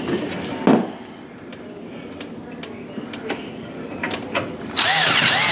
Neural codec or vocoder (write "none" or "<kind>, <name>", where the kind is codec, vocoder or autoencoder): none